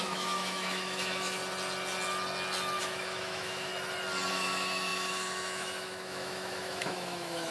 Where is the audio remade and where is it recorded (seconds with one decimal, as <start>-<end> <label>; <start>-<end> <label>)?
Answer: 0.0-1.4 remade; 1.4-2.8 recorded; 2.8-3.7 remade; 3.7-4.3 recorded; 4.3-7.5 remade